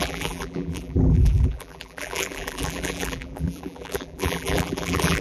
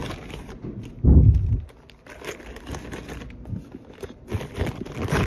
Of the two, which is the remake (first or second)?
first